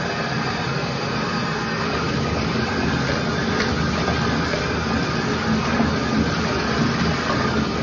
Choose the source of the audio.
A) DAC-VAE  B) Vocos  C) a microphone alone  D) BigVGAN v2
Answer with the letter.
C